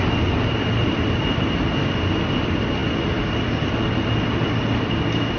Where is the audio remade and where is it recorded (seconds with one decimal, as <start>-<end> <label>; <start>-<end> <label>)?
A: 0.0-5.4 recorded